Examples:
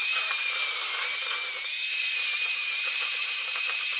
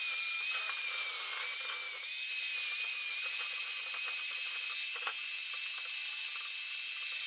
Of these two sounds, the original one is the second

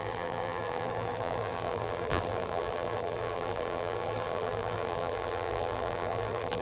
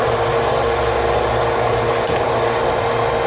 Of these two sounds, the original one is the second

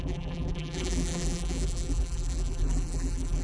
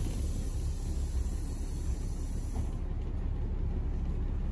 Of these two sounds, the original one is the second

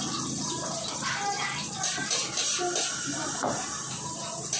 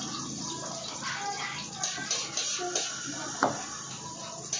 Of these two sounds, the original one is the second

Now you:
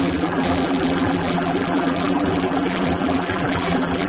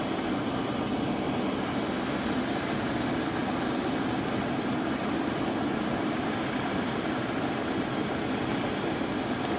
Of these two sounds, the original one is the second